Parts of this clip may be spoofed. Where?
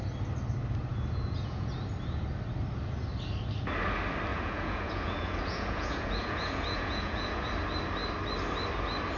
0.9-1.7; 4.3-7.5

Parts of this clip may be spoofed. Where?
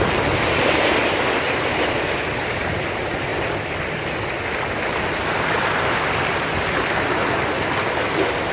none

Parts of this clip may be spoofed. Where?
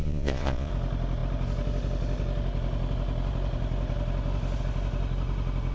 0.0-0.7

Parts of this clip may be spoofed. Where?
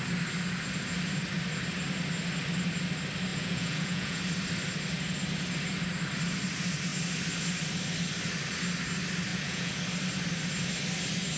3.3-4.2; 9.3-9.8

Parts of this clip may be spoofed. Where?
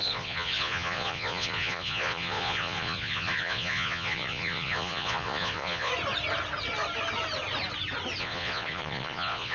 0.0-5.9; 8.2-9.5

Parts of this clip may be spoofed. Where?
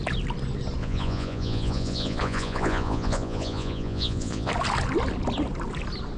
0.8-4.5